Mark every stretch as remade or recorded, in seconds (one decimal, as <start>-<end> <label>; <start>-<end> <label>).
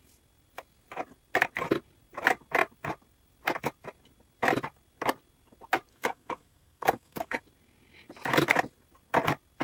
0.0-5.9 recorded; 5.9-7.4 remade; 7.4-9.6 recorded